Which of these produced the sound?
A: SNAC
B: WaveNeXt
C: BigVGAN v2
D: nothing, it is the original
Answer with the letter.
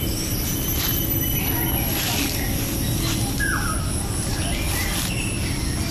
D